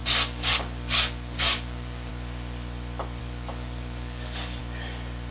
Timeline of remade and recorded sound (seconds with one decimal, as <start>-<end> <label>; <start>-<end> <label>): 0.0-2.1 remade; 2.1-3.2 recorded; 3.2-4.6 remade; 4.6-5.3 recorded